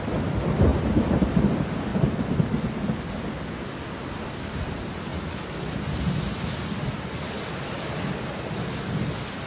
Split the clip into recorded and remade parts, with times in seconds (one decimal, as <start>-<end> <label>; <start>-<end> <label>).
0.0-9.5 recorded